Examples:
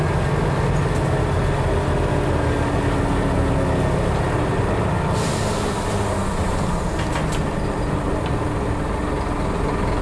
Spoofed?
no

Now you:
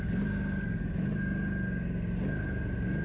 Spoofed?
no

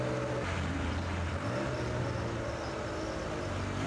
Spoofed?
no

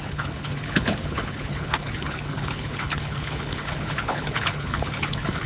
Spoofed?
yes